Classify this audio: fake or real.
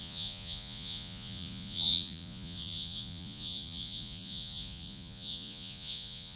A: fake